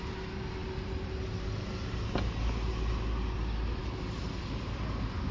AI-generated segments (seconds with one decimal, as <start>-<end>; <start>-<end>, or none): none